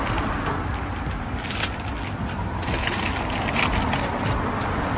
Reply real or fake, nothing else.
real